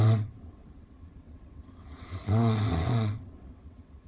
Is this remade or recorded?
remade